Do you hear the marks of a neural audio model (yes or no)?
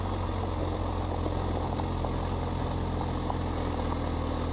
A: no